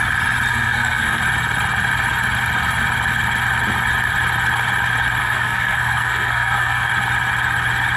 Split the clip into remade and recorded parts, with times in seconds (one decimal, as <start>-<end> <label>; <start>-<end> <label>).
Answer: 0.0-0.5 recorded; 0.5-1.2 remade; 1.2-5.2 recorded; 5.2-6.9 remade; 6.9-8.0 recorded